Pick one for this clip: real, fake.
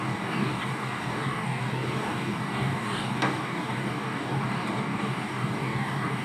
fake